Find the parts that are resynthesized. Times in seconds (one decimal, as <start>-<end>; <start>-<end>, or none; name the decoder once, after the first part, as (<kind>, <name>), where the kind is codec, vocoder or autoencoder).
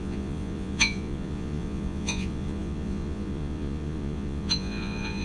0.0-5.2 (vocoder, Vocos)